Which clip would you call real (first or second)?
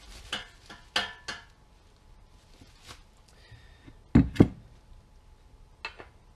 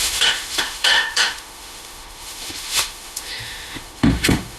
first